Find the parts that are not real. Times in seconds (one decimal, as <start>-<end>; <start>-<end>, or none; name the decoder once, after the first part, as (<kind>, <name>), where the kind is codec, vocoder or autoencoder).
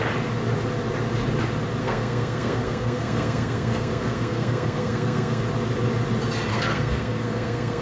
1.8-5.4 (codec, SNAC); 6.5-7.8